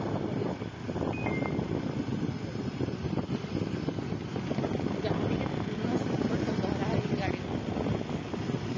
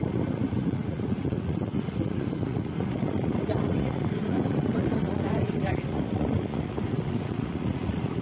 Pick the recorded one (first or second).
first